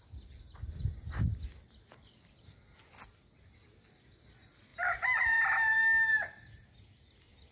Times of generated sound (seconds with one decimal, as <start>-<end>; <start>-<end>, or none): none